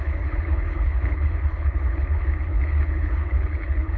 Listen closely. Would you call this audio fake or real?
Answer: fake